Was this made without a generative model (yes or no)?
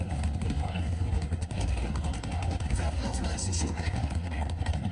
no